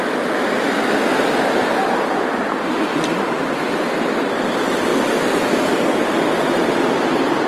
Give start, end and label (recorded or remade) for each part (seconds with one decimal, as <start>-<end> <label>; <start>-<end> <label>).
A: 0.0-7.5 recorded